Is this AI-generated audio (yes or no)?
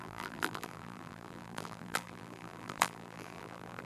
yes